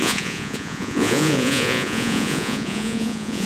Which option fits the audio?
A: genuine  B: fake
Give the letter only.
B